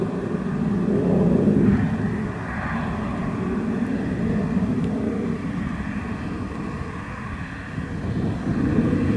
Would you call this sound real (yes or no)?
yes